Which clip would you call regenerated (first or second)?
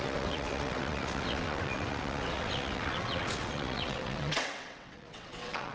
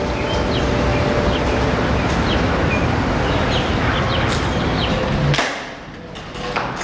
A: first